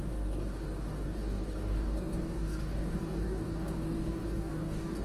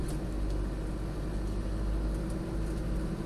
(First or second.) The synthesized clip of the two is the first